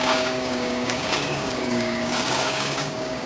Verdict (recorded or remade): remade